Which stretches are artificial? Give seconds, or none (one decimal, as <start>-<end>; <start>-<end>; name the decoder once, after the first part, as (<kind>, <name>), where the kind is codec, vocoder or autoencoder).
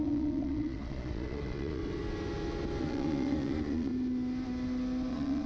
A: 0.0-1.8 (vocoder, Vocos); 2.8-3.9; 5.1-5.5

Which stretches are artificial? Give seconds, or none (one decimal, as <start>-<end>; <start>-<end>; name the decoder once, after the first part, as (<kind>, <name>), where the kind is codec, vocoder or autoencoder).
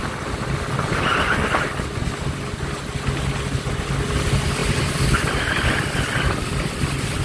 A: none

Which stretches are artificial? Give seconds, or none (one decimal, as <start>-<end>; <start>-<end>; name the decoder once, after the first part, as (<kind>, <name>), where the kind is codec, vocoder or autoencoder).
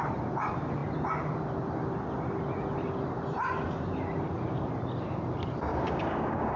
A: 5.7-6.6 (codec, DAC)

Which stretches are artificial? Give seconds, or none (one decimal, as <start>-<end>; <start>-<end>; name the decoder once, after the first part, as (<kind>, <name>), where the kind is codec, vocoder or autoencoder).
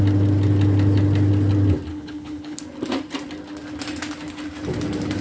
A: 1.9-2.6 (codec, HILCodec)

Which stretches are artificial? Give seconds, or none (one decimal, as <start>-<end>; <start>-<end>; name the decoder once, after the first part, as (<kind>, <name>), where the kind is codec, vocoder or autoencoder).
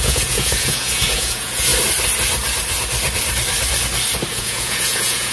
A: 0.0-1.7 (vocoder, Vocos); 4.3-5.3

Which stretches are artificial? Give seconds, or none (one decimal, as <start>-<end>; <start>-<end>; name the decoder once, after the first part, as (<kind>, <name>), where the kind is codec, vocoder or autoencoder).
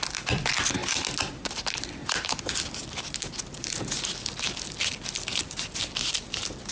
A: none